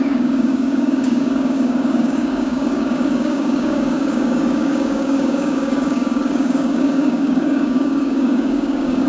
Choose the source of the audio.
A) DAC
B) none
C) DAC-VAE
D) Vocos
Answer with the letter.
A